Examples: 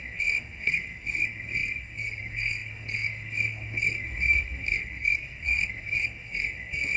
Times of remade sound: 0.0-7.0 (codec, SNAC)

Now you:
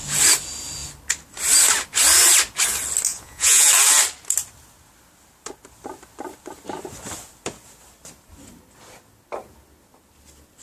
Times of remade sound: 3.1-3.7 (vocoder, Vocos)

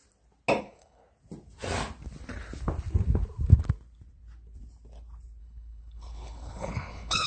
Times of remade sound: 0.6-1.0 (codec, HILCodec); 5.4-7.3

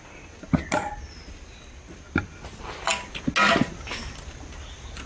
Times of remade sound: none

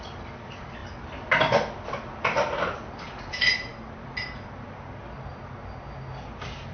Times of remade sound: none